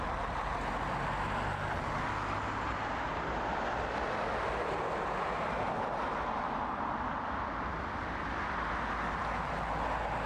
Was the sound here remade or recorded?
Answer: recorded